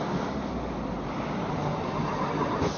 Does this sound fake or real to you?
real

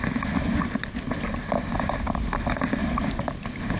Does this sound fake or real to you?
real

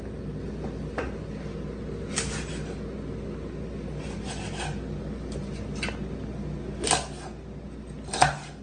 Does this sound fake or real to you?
real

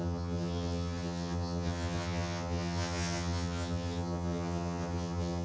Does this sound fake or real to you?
fake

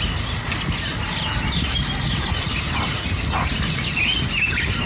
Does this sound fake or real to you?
real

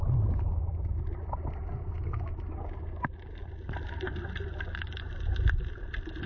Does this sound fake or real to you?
real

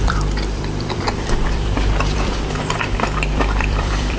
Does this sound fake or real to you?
fake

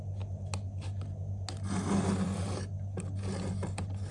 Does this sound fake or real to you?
real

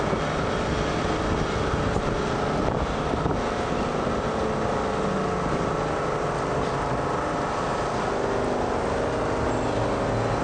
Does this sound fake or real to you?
real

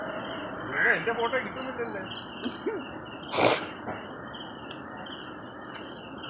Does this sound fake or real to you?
real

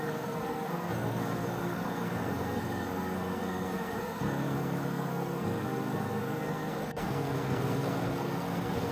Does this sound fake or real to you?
fake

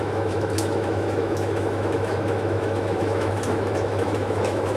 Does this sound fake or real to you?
fake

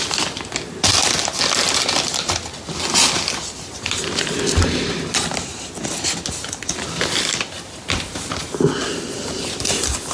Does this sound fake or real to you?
real